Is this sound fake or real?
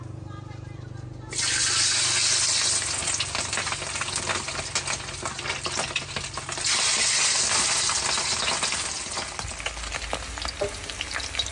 real